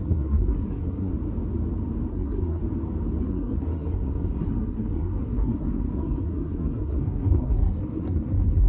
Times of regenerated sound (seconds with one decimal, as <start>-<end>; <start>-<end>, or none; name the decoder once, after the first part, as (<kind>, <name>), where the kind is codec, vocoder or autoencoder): 0.0-1.1 (codec, SNAC); 2.1-2.6; 3.2-8.7